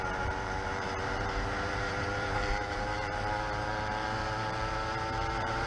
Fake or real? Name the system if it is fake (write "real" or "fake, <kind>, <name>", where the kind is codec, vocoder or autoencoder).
fake, vocoder, BigVGAN v2